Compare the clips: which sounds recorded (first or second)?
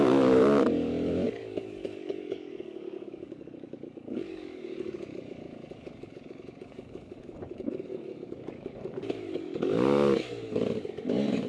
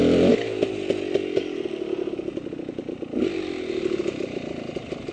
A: second